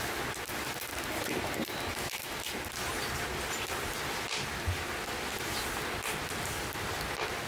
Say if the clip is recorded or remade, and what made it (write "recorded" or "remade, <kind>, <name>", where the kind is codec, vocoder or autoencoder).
recorded